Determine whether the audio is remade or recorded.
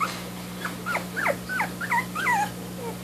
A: recorded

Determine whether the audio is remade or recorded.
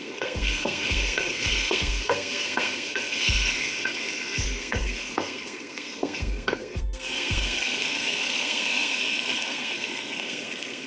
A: remade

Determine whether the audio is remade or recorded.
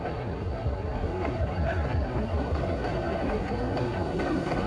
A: remade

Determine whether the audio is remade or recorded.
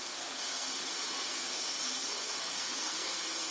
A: remade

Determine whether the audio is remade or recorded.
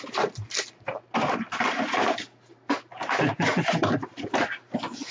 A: recorded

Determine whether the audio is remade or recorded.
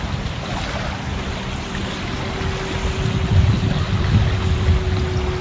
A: recorded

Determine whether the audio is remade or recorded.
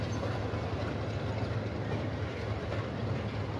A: recorded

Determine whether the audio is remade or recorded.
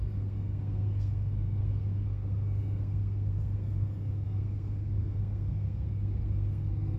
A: remade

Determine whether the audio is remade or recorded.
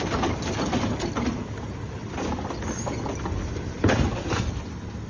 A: recorded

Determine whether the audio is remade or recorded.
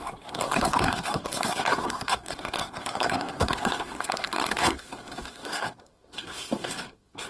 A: remade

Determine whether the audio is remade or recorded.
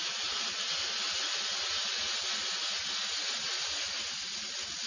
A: recorded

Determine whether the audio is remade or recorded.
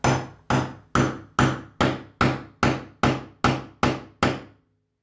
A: recorded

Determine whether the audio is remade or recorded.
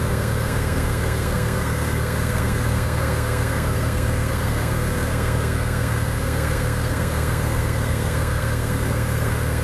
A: remade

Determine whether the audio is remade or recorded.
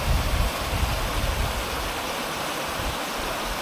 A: recorded